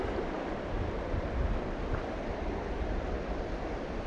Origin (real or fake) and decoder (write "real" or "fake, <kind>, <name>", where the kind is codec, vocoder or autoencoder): real